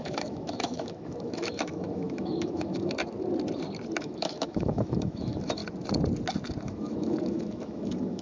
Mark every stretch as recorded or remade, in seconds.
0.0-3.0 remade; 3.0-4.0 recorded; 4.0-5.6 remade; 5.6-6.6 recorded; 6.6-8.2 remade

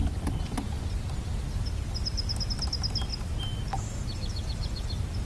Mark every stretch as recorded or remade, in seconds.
0.0-5.3 recorded

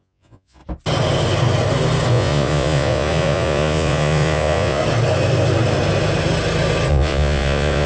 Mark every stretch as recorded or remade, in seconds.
0.0-0.6 remade; 0.6-2.1 recorded; 2.1-4.8 remade; 4.8-6.9 recorded; 6.9-7.9 remade

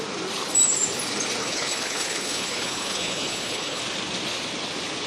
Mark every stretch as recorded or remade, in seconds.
0.0-1.4 recorded; 1.4-3.8 remade; 3.8-5.1 recorded